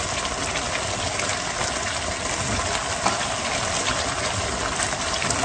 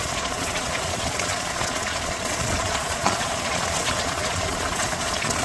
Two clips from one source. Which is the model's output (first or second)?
second